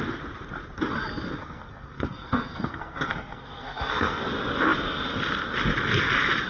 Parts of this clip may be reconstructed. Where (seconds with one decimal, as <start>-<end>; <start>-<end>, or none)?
1.4-4.2